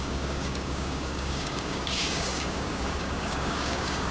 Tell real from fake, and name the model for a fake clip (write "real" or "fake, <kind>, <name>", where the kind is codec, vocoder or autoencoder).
fake, codec, DAC